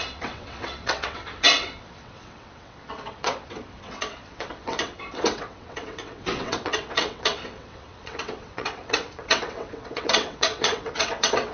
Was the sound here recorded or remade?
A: remade